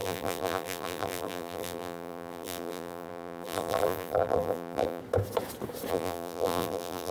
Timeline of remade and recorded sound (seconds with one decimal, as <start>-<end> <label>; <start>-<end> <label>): 0.0-5.0 remade; 5.0-5.9 recorded; 5.9-7.1 remade

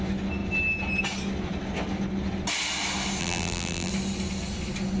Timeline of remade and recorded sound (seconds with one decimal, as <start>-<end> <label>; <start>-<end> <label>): 0.0-3.2 recorded; 3.2-3.9 remade; 3.9-5.0 recorded

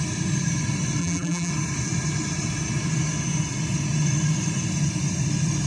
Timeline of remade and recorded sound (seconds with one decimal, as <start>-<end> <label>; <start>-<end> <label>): 0.0-1.0 recorded; 1.0-1.5 remade; 1.5-5.7 recorded

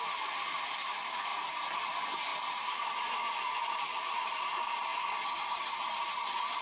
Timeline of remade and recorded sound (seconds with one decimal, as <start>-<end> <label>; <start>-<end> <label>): 0.0-1.3 remade; 1.3-1.8 recorded; 1.8-2.3 remade; 2.3-3.6 recorded; 3.6-4.9 remade; 4.9-6.6 recorded

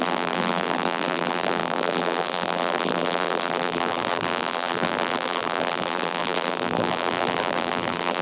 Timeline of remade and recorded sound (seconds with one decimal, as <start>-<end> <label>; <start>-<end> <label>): 0.0-8.2 remade

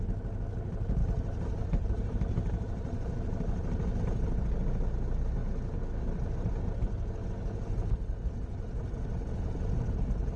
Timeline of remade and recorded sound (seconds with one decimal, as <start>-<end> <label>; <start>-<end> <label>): 0.0-1.0 recorded; 1.0-4.0 remade; 4.0-10.4 recorded